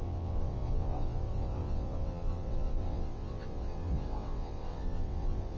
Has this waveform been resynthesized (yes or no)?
yes